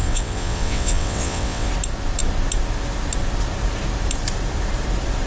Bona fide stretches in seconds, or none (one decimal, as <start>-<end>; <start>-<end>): 1.7-5.3